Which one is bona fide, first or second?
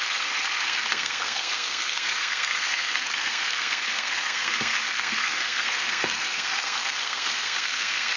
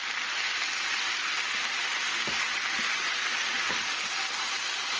second